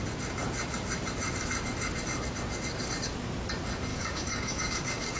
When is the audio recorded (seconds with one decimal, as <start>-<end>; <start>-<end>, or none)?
0.0-3.9